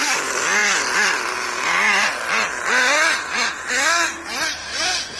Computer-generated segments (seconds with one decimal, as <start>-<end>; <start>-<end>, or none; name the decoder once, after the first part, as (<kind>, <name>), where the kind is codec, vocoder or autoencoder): 4.7-5.2 (vocoder, Vocos)